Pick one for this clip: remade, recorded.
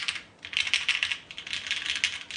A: recorded